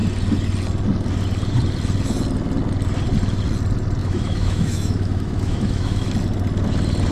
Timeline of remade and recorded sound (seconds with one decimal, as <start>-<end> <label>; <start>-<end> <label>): 0.0-4.0 recorded; 4.0-6.1 remade; 6.1-7.1 recorded